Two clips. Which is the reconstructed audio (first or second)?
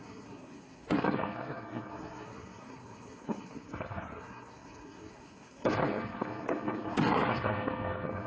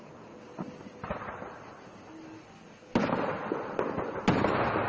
first